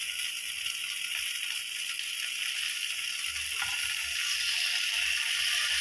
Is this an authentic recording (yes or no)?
yes